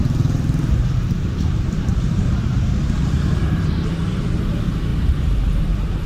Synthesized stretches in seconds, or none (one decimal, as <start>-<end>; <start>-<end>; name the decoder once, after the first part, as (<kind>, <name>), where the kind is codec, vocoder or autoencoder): 0.0-6.1 (vocoder, BigVGAN v2)